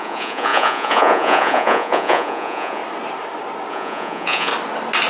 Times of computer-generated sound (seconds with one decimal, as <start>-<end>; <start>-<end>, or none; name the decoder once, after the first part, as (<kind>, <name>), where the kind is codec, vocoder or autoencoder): 0.0-2.8 (vocoder, Vocos); 3.7-4.5